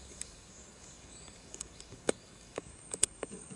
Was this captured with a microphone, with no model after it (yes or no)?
no